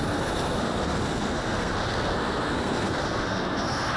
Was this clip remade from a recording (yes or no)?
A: yes